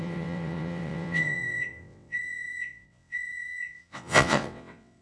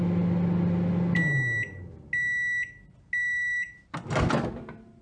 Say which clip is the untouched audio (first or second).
second